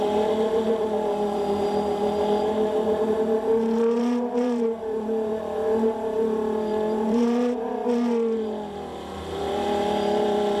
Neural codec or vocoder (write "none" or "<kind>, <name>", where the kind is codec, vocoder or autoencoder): vocoder, BigVGAN v2